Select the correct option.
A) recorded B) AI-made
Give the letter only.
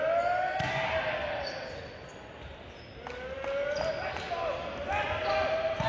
A